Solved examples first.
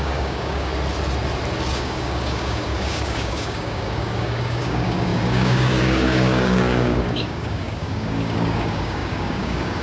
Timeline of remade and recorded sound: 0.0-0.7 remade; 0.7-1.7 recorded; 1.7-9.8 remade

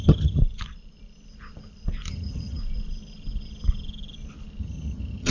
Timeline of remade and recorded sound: 0.0-0.4 remade; 0.4-2.1 recorded; 2.1-2.6 remade; 2.6-4.6 recorded; 4.6-5.3 remade

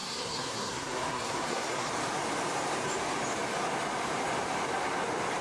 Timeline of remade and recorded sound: 0.0-1.9 remade; 1.9-5.4 recorded

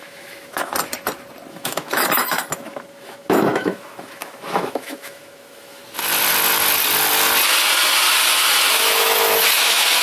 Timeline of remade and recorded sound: 0.0-0.7 remade; 0.7-1.5 recorded; 1.5-5.8 remade; 5.8-8.7 recorded; 8.7-10.0 remade

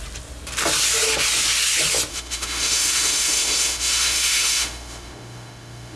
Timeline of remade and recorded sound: 0.0-2.1 recorded; 2.1-6.0 remade